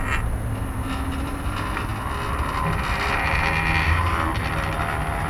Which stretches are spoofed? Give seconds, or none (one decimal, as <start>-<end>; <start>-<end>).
none